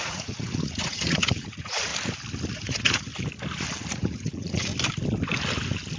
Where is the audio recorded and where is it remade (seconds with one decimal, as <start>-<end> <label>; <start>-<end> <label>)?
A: 0.0-1.9 remade; 1.9-2.5 recorded; 2.5-3.1 remade; 3.1-3.9 recorded; 3.9-4.7 remade; 4.7-6.0 recorded